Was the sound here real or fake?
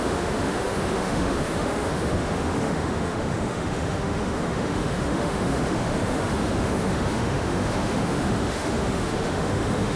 fake